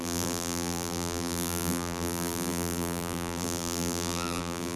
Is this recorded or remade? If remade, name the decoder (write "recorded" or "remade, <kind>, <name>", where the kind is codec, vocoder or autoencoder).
remade, vocoder, BigVGAN v2